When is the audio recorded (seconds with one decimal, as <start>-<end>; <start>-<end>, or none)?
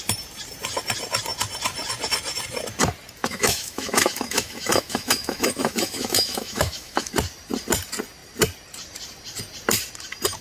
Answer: 0.0-3.2; 7.1-10.4